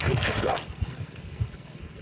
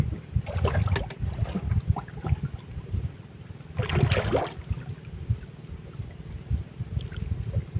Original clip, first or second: second